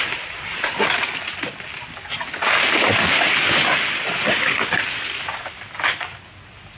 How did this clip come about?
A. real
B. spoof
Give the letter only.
A